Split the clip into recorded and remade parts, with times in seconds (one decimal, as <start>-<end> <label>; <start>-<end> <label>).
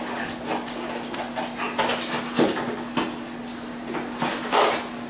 0.0-5.1 recorded